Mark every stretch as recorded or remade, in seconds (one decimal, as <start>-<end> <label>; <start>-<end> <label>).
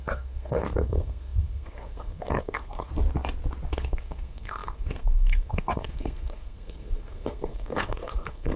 0.0-2.9 remade; 2.9-3.7 recorded; 3.7-8.6 remade